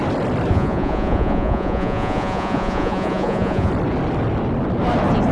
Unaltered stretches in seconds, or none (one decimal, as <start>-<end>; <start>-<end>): 0.0-0.5; 3.7-5.3